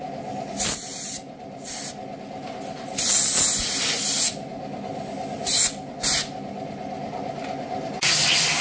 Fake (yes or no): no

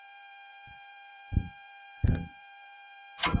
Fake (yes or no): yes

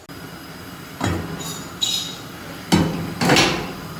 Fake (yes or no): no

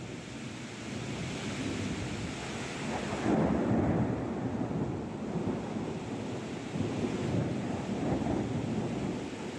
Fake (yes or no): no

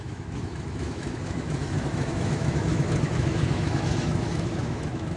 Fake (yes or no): yes